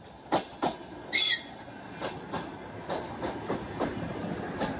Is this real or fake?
real